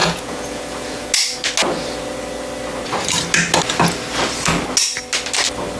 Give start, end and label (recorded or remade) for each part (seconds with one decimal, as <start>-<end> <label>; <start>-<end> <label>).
0.0-1.1 remade; 1.1-5.8 recorded

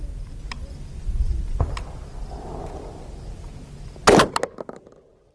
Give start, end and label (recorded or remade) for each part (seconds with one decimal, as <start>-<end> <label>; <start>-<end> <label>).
0.0-5.3 recorded

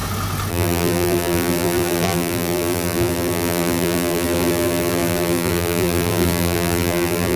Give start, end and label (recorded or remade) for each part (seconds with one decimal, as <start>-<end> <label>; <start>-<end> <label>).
0.0-0.5 recorded; 0.5-7.4 remade

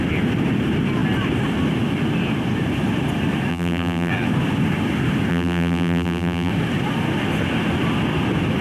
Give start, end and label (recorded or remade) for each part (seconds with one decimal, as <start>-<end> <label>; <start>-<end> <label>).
0.0-3.5 recorded; 3.5-4.1 remade; 4.1-5.3 recorded; 5.3-6.5 remade; 6.5-8.6 recorded